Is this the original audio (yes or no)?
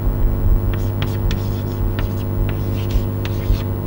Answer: yes